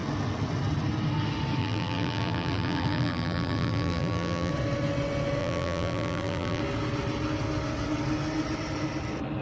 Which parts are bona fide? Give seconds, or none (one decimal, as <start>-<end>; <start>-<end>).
0.0-1.6; 4.5-5.4; 6.6-9.4